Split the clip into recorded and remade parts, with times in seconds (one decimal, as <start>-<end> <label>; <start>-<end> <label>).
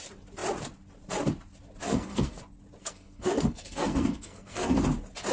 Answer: 0.0-1.9 recorded; 1.9-2.4 remade; 2.4-2.8 recorded; 2.8-4.8 remade; 4.8-5.3 recorded